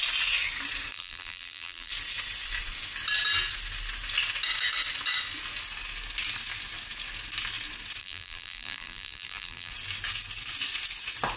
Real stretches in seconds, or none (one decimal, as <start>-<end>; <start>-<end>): 0.0-0.9; 1.9-8.0; 9.7-11.4

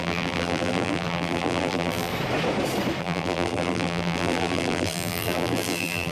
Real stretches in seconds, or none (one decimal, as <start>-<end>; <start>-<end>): 2.1-3.0

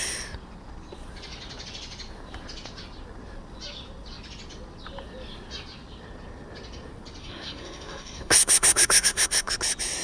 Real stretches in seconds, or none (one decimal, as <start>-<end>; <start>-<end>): 0.0-7.2; 9.5-10.0

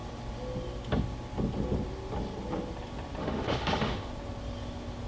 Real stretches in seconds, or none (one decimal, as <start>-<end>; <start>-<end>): 0.0-3.2; 4.1-5.1